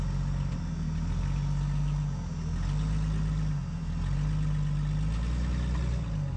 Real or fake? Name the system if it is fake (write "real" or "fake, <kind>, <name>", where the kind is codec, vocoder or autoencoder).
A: real